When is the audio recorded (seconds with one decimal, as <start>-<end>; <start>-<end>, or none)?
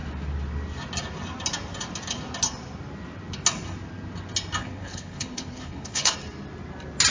0.0-4.6; 6.1-7.1